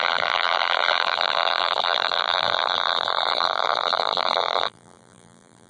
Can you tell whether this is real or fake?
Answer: fake